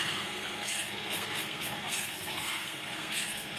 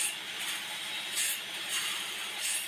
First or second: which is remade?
first